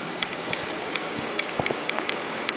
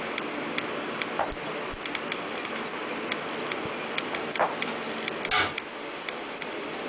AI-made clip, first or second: first